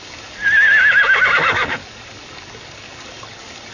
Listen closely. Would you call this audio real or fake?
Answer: fake